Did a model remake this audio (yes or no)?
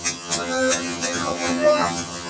yes